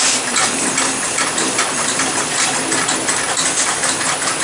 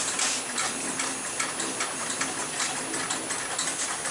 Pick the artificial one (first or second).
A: first